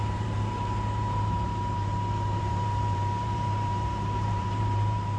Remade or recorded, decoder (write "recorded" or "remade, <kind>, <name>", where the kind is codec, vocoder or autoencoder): remade, vocoder, BigVGAN v2